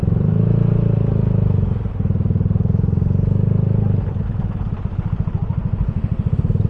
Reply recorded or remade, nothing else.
recorded